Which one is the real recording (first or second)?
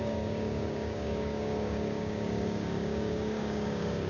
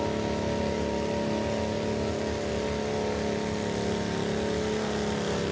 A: second